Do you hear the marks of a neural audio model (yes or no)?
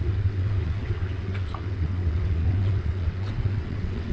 yes